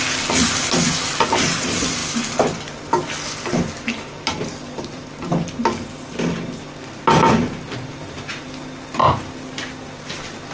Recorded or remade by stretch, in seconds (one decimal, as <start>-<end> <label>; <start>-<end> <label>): 0.0-10.5 recorded